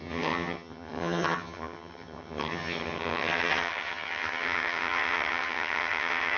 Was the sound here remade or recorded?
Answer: remade